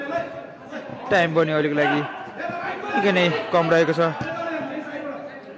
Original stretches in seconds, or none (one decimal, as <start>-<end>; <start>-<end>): 0.0-5.6